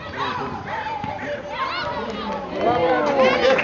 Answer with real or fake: real